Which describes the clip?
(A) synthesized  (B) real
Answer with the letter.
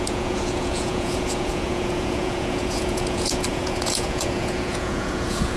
A